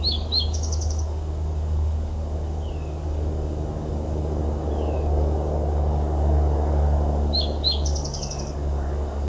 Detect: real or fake fake